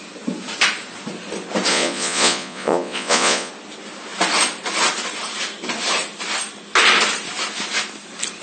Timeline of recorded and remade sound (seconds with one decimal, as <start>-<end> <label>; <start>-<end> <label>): 0.0-1.7 recorded; 1.7-3.5 remade; 3.5-8.4 recorded